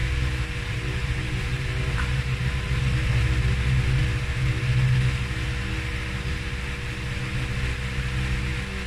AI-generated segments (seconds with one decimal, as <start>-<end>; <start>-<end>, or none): 0.0-2.8